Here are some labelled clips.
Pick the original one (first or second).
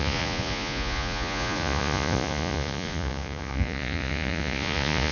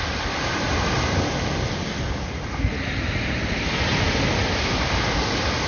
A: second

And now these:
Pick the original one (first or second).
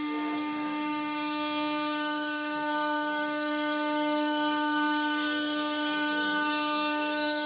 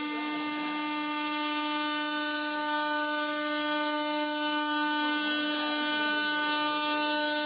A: second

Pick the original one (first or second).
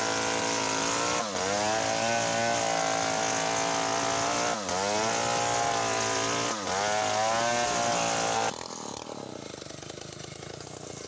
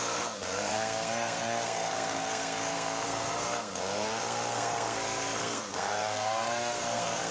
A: first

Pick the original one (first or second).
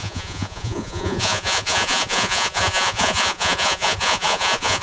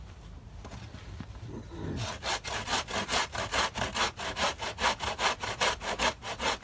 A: second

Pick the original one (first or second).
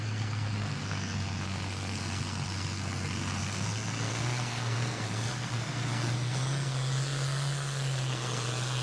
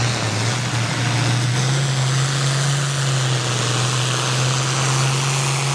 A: second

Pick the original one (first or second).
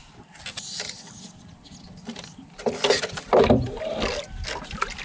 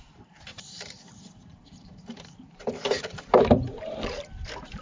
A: first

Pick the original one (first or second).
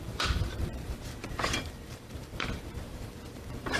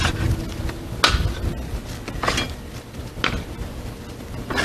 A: second